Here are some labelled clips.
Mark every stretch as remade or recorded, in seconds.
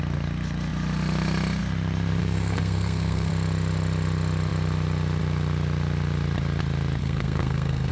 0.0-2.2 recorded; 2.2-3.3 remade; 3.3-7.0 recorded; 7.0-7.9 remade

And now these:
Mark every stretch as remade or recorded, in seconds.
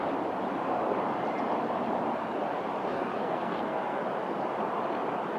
0.0-2.8 recorded; 2.8-4.0 remade; 4.0-5.4 recorded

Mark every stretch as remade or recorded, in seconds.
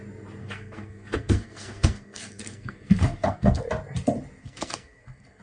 0.0-0.4 recorded; 0.4-3.6 remade; 3.6-4.4 recorded; 4.4-5.4 remade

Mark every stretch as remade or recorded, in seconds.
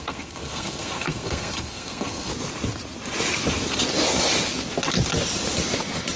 0.0-2.3 remade; 2.3-6.2 recorded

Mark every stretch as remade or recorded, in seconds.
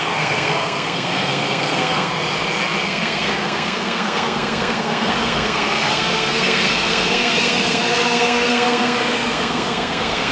0.0-2.1 remade; 2.1-2.8 recorded; 2.8-10.3 remade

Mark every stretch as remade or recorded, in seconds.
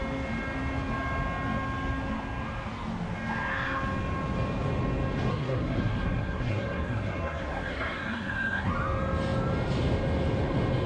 0.0-5.3 recorded; 5.3-8.7 remade; 8.7-10.9 recorded